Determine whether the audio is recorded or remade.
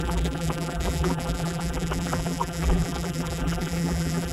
remade